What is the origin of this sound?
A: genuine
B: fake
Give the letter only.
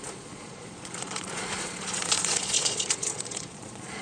B